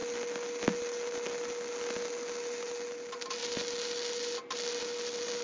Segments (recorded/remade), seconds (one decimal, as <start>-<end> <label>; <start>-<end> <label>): 0.0-5.4 recorded